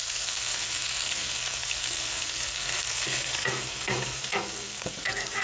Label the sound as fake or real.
fake